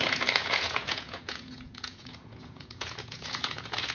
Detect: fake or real fake